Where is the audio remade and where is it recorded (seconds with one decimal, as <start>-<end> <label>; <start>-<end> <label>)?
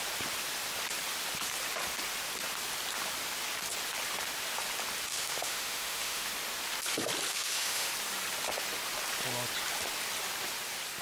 0.0-5.1 recorded; 5.1-6.3 remade; 6.3-7.3 recorded; 7.3-7.9 remade; 7.9-11.0 recorded